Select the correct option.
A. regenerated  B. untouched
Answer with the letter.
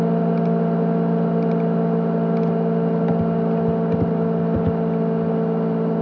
B